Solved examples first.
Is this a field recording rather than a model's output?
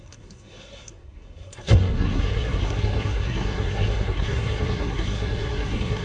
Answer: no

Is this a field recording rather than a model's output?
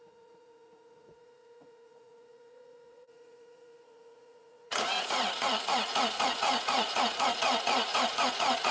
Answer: no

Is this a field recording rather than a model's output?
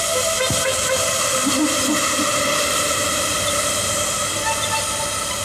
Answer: no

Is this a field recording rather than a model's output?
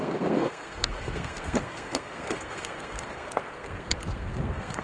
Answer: no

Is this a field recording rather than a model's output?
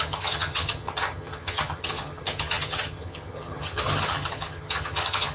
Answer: no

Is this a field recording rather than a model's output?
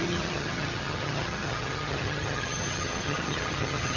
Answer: no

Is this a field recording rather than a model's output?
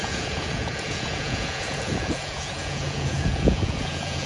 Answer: no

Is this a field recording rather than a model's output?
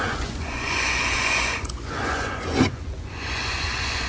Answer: no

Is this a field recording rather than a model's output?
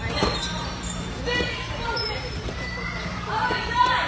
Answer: no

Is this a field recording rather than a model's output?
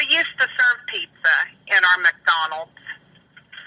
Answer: yes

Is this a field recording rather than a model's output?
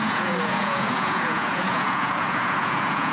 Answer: no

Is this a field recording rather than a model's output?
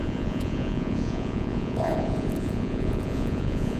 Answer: no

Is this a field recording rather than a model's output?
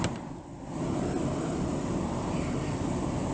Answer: no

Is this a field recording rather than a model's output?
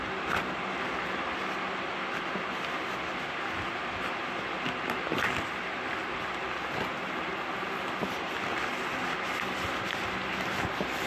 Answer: yes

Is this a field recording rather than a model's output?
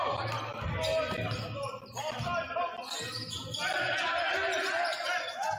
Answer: yes